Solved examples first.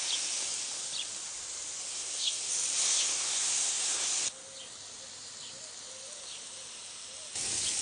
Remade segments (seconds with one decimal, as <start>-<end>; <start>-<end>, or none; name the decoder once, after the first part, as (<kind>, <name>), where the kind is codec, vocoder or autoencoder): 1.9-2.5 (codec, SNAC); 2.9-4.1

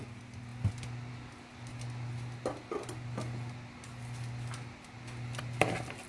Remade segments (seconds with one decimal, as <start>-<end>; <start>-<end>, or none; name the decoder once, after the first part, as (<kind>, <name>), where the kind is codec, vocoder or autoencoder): none

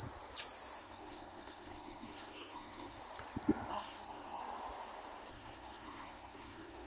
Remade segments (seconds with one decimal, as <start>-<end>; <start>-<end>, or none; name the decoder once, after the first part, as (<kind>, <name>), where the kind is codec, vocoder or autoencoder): 0.8-3.0 (codec, SNAC); 3.7-4.4; 5.3-6.9